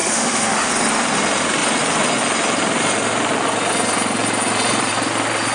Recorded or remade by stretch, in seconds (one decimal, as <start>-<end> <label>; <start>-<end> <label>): 0.0-0.7 remade; 0.7-5.5 recorded